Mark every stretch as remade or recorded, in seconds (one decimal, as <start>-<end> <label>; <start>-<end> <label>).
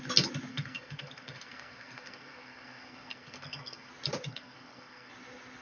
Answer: 0.0-0.5 recorded; 0.5-3.9 remade; 3.9-4.3 recorded; 4.3-5.1 remade; 5.1-5.6 recorded